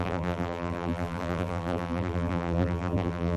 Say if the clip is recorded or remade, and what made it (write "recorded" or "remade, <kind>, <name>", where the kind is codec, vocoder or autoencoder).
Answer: remade, vocoder, BigVGAN v2